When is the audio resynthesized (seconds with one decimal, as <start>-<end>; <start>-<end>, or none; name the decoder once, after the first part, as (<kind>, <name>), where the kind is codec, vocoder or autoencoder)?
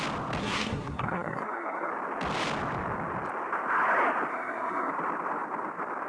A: 0.4-1.9 (codec, SNAC); 4.3-4.9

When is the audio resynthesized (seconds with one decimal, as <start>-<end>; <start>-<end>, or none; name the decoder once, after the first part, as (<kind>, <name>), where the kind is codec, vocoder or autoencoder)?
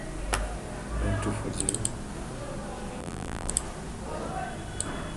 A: 3.0-3.5 (vocoder, BigVGAN v2)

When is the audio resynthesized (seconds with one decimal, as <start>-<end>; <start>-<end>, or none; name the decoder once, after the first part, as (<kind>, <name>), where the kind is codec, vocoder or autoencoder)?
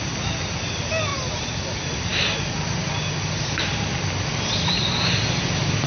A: none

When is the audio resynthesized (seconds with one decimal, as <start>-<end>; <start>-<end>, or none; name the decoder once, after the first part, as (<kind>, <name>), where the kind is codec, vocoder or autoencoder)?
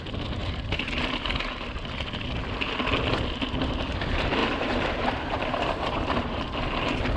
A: 4.4-6.4 (vocoder, BigVGAN v2)